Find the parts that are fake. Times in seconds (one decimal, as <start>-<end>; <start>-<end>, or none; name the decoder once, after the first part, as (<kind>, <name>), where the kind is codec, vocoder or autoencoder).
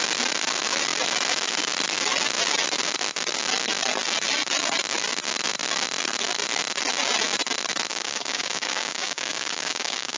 7.9-10.2 (codec, DAC)